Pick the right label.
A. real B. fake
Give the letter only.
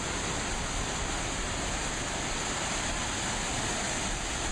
A